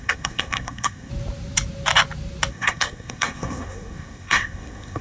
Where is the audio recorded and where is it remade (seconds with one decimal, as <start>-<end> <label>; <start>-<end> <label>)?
0.0-1.1 remade; 1.1-2.5 recorded; 2.5-5.0 remade